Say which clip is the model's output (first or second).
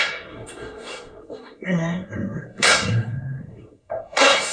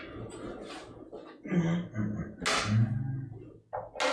first